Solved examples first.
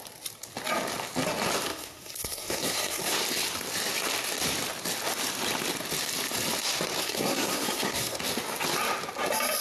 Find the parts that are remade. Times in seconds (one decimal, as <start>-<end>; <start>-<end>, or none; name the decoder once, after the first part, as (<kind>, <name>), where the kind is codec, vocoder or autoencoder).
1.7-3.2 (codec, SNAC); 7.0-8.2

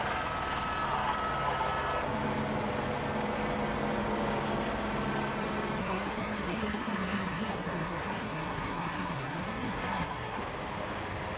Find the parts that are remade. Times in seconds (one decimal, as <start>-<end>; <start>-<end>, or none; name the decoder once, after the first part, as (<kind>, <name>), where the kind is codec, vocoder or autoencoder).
5.8-10.4 (codec, SNAC)

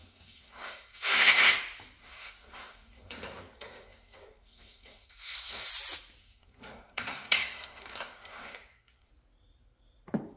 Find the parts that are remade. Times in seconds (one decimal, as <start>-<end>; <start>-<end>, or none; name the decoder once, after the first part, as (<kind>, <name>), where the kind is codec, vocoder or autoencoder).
0.0-1.5 (codec, SNAC); 2.0-5.7; 6.2-9.1

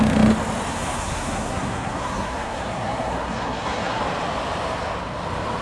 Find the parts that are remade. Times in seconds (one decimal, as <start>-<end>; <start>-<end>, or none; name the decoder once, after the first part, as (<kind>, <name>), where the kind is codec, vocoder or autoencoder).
0.7-4.0 (codec, SNAC)